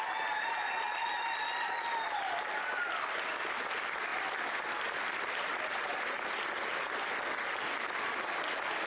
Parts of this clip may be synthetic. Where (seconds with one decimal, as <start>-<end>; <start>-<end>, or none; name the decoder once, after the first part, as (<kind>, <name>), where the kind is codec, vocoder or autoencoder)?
none